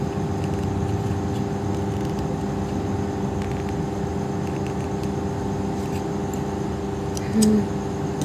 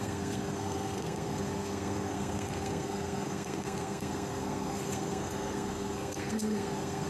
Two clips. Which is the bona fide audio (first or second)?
first